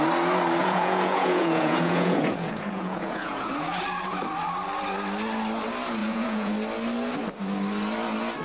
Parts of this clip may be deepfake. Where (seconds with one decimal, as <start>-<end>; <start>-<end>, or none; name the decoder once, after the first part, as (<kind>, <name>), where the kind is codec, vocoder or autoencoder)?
0.6-3.5 (vocoder, Vocos); 6.0-6.5